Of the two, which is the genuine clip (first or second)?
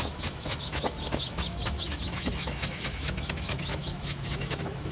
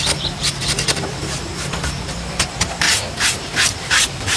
second